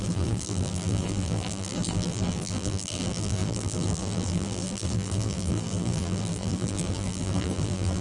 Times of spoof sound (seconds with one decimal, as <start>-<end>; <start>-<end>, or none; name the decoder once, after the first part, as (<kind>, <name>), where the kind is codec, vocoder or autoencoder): 0.0-8.0 (vocoder, BigVGAN v2)